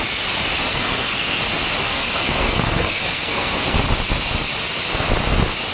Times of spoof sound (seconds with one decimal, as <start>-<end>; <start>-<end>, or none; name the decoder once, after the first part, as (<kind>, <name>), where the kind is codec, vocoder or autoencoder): 0.7-1.4 (codec, SNAC); 1.8-3.8